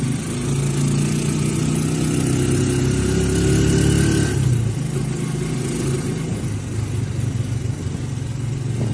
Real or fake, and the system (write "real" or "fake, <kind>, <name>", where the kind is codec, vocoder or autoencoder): real